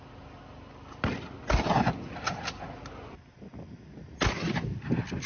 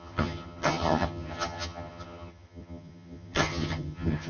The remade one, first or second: second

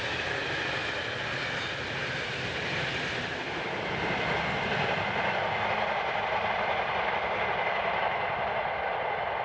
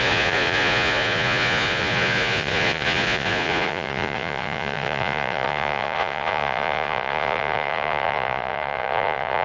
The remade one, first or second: second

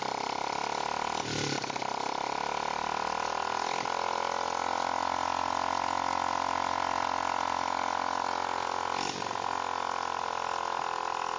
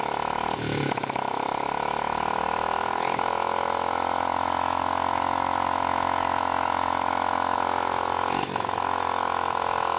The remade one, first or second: second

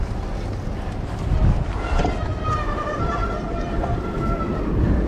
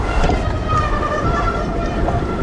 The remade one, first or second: second